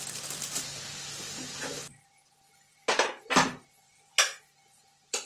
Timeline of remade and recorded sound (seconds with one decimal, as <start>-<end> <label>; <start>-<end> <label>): 0.0-1.9 recorded; 1.9-5.3 remade